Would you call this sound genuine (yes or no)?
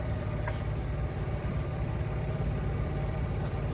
no